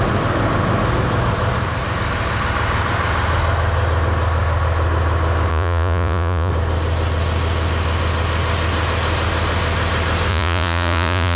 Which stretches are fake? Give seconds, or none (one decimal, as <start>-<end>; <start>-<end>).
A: 5.5-6.5; 10.3-11.4